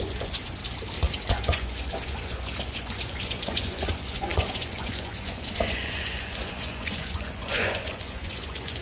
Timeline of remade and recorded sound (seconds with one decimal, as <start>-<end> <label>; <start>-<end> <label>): 0.0-0.6 remade; 0.6-1.3 recorded; 1.3-8.8 remade